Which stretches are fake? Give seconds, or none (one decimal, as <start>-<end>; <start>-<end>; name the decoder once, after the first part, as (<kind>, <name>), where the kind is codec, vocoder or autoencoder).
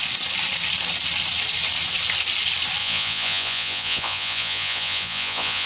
2.8-5.7 (vocoder, Vocos)